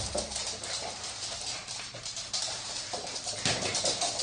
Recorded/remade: remade